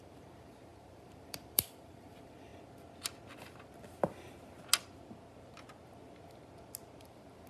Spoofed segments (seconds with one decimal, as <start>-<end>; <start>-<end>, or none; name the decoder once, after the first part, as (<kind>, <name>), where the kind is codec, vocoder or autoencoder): 0.0-2.5 (vocoder, BigVGAN v2); 7.0-7.5